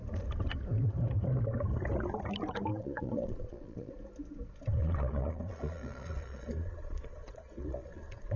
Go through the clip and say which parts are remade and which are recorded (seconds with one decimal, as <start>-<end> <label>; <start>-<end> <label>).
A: 0.0-2.7 recorded; 2.7-3.9 remade; 3.9-4.8 recorded; 4.8-8.4 remade